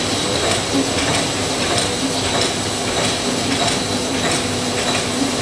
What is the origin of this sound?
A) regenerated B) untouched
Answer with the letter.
B